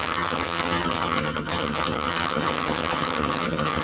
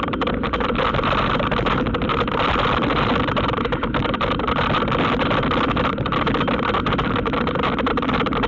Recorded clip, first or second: second